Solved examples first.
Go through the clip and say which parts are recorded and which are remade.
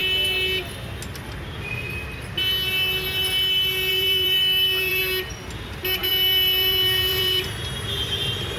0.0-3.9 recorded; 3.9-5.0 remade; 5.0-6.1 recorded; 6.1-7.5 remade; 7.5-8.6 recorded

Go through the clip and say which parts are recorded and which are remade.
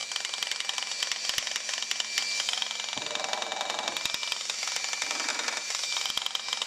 0.0-1.0 remade; 1.0-5.3 recorded; 5.3-6.1 remade; 6.1-6.7 recorded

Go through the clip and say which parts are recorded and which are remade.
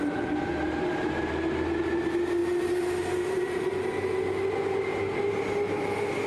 0.0-6.3 recorded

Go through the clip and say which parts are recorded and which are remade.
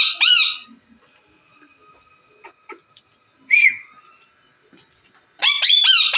0.0-6.2 recorded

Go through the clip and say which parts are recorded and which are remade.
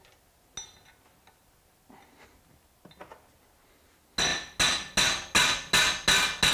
0.0-6.5 recorded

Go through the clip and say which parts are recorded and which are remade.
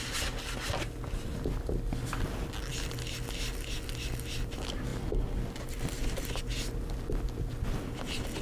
0.0-8.4 recorded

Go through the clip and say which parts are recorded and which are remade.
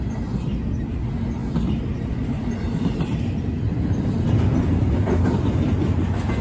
0.0-1.4 recorded; 1.4-4.6 remade; 4.6-6.4 recorded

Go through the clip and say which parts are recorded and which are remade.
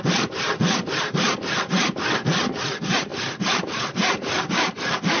0.0-3.1 recorded; 3.1-4.5 remade; 4.5-5.2 recorded